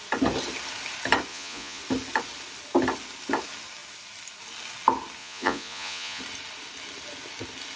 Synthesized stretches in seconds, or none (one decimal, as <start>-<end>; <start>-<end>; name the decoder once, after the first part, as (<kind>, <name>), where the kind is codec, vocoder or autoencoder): 1.3-1.8 (vocoder, Vocos); 5.2-6.2